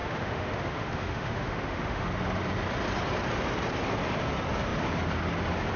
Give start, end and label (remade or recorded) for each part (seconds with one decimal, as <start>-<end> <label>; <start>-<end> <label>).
0.0-2.1 remade; 2.1-5.8 recorded